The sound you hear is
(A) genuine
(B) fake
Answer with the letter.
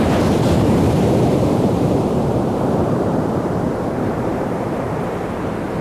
B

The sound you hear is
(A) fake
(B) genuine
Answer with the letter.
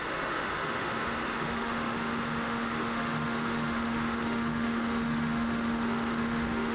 A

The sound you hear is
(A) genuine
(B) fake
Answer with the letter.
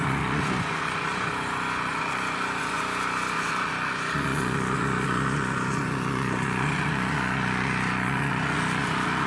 B